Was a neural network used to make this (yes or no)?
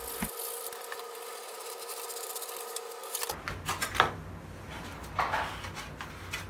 no